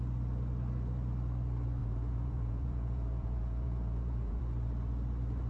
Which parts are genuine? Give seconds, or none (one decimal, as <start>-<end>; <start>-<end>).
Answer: 0.0-1.8; 4.4-5.5